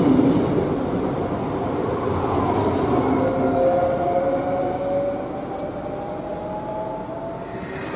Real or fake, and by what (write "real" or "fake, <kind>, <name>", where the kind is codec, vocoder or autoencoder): real